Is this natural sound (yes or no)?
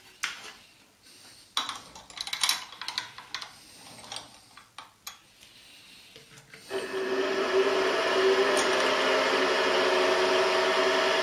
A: yes